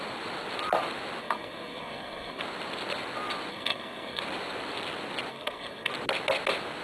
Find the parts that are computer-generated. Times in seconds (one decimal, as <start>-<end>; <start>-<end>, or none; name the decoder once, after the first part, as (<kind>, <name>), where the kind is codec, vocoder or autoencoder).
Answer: 1.2-2.4 (codec, SNAC); 3.5-4.2; 5.3-5.9